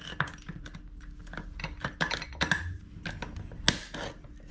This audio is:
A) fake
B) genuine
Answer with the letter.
B